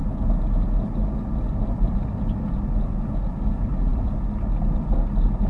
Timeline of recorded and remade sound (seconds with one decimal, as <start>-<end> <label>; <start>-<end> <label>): 0.0-3.9 recorded; 3.9-5.5 remade